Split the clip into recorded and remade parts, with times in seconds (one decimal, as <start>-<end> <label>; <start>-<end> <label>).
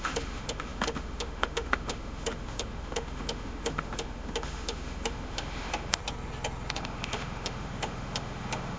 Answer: 0.0-6.0 remade; 6.0-6.7 recorded; 6.7-8.8 remade